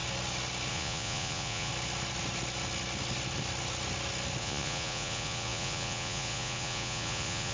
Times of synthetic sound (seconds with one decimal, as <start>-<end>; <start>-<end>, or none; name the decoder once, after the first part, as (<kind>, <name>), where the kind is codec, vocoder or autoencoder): 0.7-1.7 (vocoder, Vocos); 4.4-7.5